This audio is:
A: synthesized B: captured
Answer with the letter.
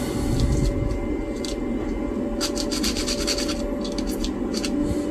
B